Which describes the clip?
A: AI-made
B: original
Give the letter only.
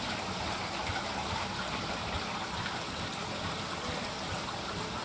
B